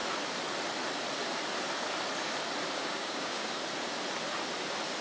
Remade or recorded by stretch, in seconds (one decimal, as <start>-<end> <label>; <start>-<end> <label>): 0.0-2.8 recorded; 2.8-3.5 remade; 3.5-5.0 recorded